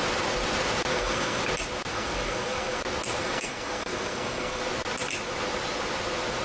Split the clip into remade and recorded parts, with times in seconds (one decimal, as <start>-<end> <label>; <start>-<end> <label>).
0.0-0.9 recorded; 0.9-1.4 remade; 1.4-1.9 recorded; 1.9-2.8 remade; 2.8-3.2 recorded; 3.2-4.6 remade; 4.6-6.4 recorded